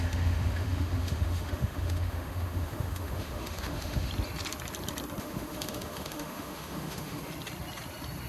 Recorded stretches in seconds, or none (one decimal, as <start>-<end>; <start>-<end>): 4.1-5.2; 7.2-8.3